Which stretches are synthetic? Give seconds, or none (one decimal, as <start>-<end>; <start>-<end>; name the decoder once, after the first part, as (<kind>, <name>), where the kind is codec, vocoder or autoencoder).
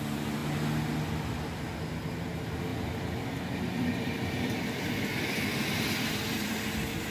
2.7-5.4 (vocoder, BigVGAN v2)